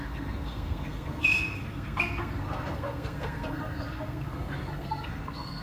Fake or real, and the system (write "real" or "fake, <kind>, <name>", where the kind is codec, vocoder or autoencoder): fake, codec, SNAC